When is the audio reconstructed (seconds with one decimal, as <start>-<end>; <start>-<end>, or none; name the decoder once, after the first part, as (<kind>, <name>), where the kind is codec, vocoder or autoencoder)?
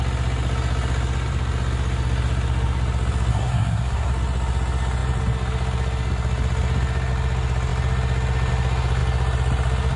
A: 3.3-4.1 (codec, SNAC)